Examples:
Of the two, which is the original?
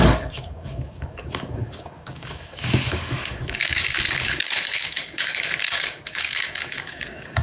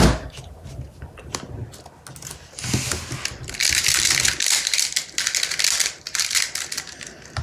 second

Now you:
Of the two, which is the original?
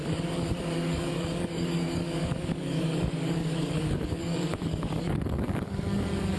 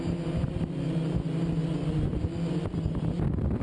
second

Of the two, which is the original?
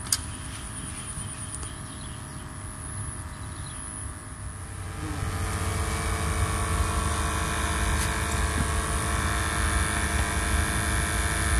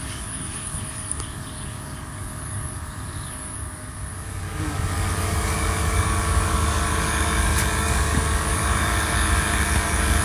first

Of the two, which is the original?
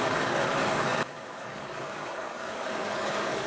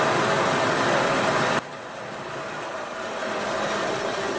second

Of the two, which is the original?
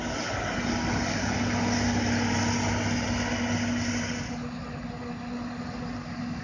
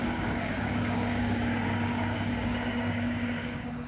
first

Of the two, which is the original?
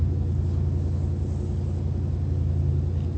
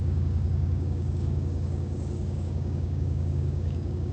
first